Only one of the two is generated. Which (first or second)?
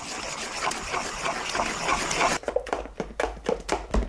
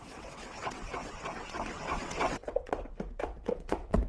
second